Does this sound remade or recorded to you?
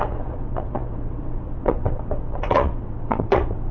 remade